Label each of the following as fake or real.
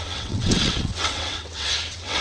fake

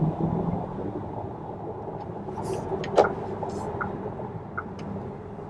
real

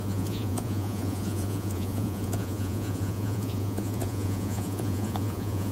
fake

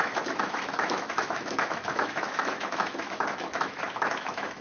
fake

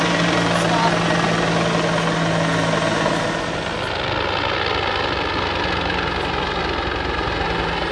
real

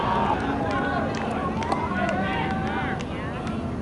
real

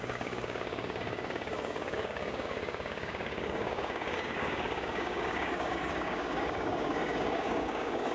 fake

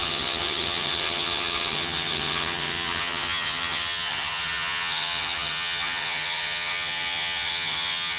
fake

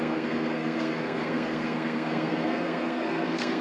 fake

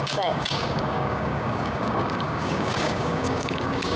fake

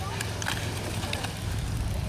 fake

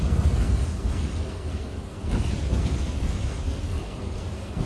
fake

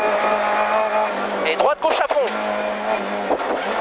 real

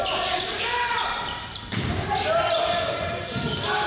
real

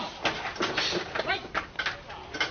real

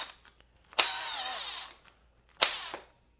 real